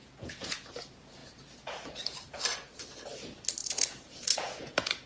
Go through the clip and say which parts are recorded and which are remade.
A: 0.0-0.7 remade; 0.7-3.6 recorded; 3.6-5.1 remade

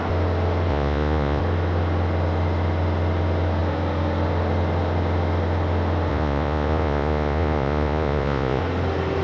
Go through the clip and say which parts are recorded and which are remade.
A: 0.0-0.7 recorded; 0.7-1.4 remade; 1.4-6.1 recorded; 6.1-8.6 remade; 8.6-9.2 recorded

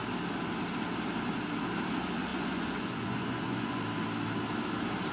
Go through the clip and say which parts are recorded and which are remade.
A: 0.0-2.3 recorded; 2.3-3.8 remade; 3.8-5.1 recorded

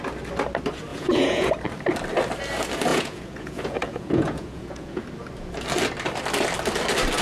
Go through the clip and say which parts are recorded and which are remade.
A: 0.0-0.9 recorded; 0.9-1.5 remade; 1.5-2.9 recorded; 2.9-5.0 remade; 5.0-7.2 recorded

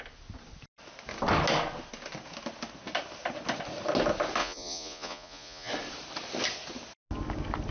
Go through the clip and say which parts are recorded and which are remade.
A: 0.0-4.4 recorded; 4.4-5.7 remade; 5.7-7.7 recorded

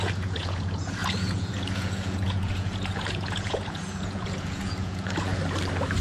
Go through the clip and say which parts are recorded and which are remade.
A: 0.0-5.3 remade; 5.3-6.0 recorded